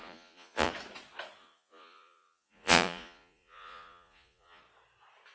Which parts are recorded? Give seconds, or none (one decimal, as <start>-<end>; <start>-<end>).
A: 0.7-1.4; 4.6-5.3